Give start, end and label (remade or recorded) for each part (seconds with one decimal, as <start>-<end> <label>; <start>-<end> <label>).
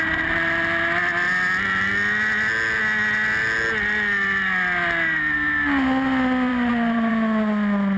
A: 0.0-6.5 recorded; 6.5-7.1 remade; 7.1-8.0 recorded